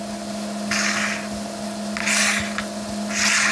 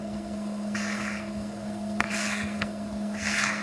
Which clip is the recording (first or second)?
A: first